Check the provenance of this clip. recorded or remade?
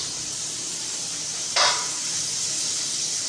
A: remade